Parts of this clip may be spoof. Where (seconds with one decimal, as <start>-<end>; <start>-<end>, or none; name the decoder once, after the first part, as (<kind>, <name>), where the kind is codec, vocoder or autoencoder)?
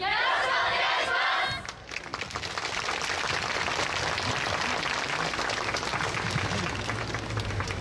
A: none